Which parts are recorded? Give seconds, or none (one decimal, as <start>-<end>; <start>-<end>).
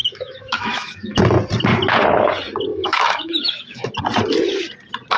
1.2-2.7; 3.9-5.2